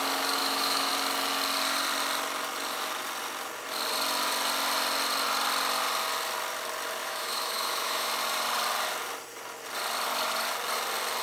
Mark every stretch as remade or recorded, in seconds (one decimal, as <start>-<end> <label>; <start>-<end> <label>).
0.0-0.4 recorded; 0.4-0.9 remade; 0.9-7.0 recorded; 7.0-8.1 remade; 8.1-11.2 recorded